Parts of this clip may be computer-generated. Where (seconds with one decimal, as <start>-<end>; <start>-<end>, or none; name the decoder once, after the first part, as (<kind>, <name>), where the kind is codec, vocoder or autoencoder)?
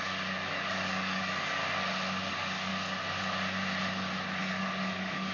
0.0-1.6 (codec, DAC); 2.3-2.7; 4.4-5.3